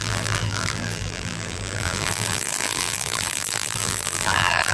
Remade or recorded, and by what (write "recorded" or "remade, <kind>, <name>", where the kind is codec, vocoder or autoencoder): remade, vocoder, BigVGAN v2